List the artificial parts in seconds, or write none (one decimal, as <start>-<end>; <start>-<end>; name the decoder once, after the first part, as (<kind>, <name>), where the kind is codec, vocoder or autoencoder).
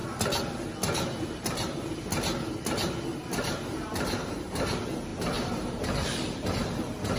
5.1-6.5 (vocoder, BigVGAN v2)